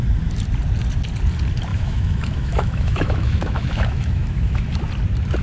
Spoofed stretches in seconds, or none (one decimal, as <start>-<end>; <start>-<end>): 1.7-4.9